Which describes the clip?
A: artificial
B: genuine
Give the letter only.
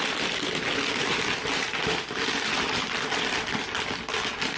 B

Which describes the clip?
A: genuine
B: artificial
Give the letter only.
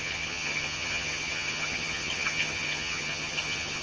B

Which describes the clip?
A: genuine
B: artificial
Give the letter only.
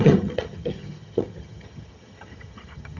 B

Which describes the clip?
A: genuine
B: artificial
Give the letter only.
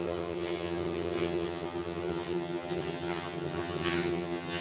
B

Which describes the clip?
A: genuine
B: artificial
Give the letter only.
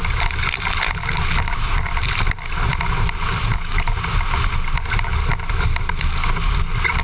A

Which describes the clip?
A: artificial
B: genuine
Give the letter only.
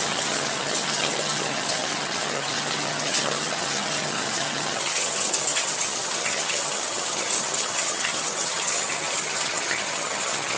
A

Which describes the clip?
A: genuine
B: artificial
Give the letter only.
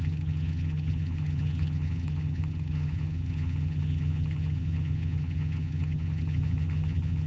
B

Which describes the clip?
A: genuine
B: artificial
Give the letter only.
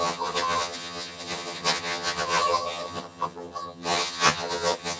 B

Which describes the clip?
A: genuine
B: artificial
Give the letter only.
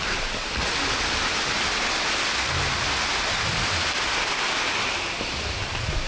A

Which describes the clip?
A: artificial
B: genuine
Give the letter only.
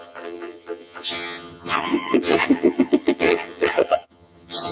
A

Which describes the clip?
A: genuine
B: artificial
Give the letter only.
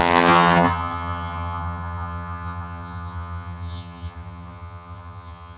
B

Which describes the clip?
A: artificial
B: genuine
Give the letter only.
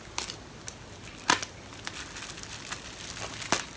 B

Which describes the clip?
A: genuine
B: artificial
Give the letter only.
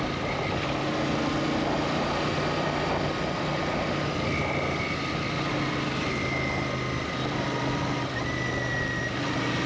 A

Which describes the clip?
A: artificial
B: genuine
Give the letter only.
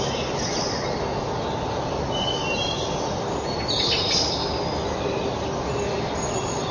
B